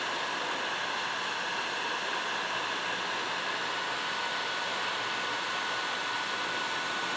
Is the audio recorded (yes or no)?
yes